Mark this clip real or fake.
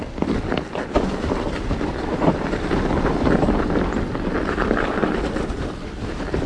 fake